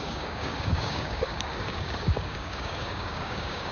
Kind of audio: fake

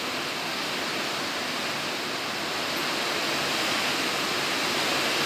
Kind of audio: real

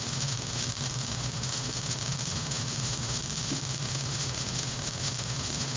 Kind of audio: fake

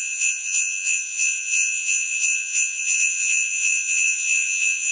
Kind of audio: fake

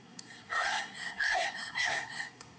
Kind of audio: fake